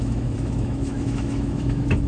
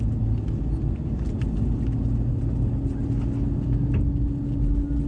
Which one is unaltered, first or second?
second